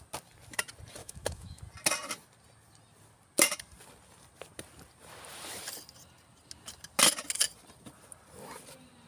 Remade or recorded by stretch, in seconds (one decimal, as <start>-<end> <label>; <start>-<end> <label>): 0.0-1.0 recorded; 1.0-1.6 remade; 1.6-9.1 recorded